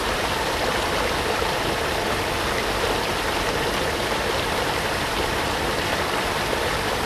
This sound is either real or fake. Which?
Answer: fake